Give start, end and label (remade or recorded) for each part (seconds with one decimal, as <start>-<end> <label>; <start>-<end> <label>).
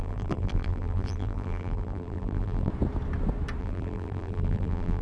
0.0-2.7 remade; 2.7-3.6 recorded; 3.6-5.0 remade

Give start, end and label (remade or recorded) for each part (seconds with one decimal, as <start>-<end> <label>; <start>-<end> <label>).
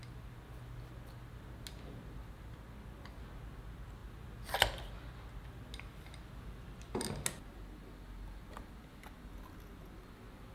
0.0-10.5 recorded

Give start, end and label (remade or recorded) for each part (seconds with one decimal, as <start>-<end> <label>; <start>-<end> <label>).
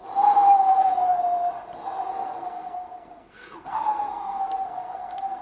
0.0-0.7 recorded; 0.7-1.2 remade; 1.2-2.1 recorded; 2.1-5.4 remade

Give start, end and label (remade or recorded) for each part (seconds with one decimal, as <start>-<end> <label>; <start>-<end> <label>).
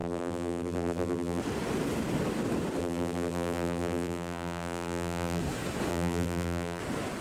0.0-1.4 remade; 1.4-2.8 recorded; 2.8-5.4 remade; 5.4-5.9 recorded; 5.9-6.8 remade; 6.8-7.2 recorded